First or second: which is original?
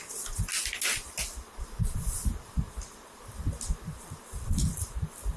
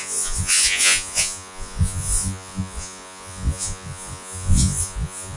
first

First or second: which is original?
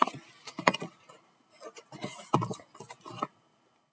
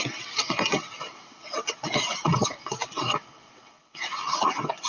first